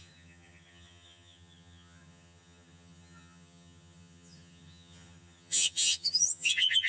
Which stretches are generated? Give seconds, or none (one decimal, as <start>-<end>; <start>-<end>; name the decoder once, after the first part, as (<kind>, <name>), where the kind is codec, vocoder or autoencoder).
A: 0.0-6.9 (vocoder, HiFi-GAN)